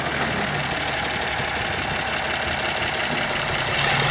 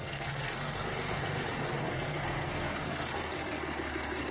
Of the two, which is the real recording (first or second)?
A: first